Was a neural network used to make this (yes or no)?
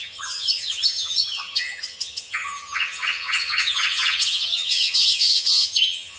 yes